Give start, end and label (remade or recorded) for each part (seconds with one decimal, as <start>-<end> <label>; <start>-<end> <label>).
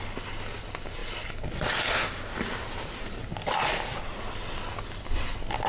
0.0-5.7 recorded